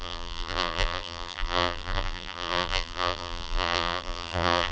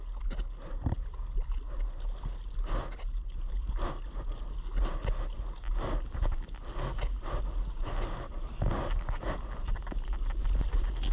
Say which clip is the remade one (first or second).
first